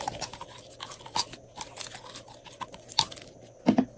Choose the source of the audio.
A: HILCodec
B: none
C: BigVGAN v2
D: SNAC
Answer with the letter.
B